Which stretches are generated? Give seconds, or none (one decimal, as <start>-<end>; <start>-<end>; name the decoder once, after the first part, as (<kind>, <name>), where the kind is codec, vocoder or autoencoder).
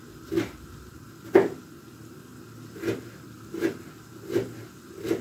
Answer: none